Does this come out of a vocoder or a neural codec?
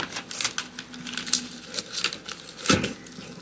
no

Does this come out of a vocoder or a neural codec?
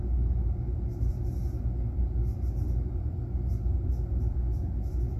no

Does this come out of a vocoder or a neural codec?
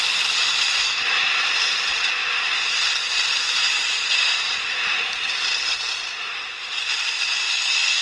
yes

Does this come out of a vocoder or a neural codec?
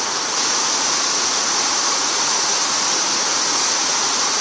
yes